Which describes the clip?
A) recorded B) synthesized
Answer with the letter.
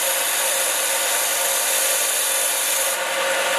A